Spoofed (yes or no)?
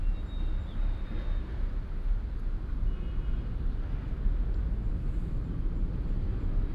no